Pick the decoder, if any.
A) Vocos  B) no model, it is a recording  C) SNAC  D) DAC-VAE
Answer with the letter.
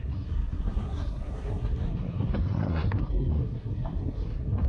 C